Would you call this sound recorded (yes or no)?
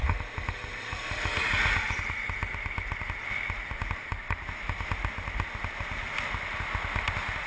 yes